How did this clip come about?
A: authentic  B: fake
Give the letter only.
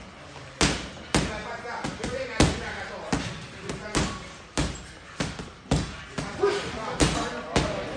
A